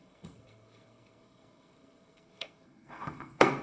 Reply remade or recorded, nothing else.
remade